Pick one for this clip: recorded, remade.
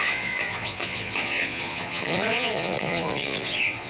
remade